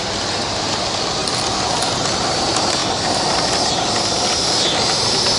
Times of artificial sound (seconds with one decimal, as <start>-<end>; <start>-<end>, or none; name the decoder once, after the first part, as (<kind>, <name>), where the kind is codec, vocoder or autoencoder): none